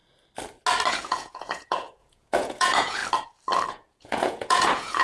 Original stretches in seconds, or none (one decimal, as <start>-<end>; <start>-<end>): 0.0-0.9; 3.0-3.7